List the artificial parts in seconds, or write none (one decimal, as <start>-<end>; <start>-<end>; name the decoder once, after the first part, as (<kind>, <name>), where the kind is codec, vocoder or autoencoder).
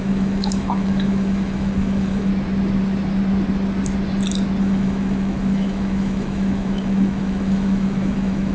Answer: 0.0-2.3 (autoencoder, DAC-VAE); 4.6-8.5